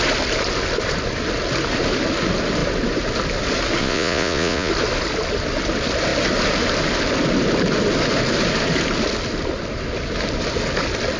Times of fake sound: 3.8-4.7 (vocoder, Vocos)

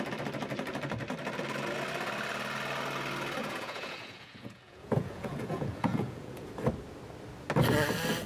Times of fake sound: 3.4-6.5 (vocoder, Vocos)

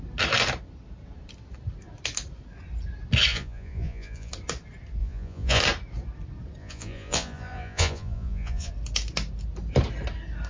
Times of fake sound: 3.3-4.3 (vocoder, Vocos); 5.0-5.6; 6.6-8.7